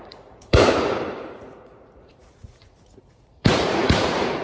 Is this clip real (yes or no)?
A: no